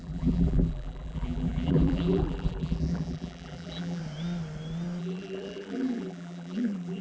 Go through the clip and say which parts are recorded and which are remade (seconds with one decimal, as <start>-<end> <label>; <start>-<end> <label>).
0.0-4.0 remade; 4.0-5.0 recorded; 5.0-7.0 remade

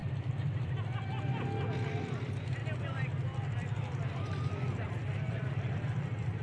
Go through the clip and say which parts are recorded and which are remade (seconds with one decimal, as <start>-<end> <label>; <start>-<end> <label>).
0.0-0.7 remade; 0.7-2.6 recorded; 2.6-6.0 remade; 6.0-6.4 recorded